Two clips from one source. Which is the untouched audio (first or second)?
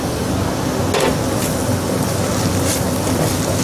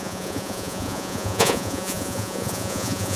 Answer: first